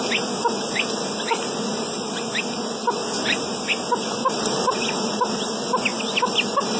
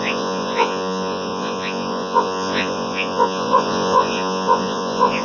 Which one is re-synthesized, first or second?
second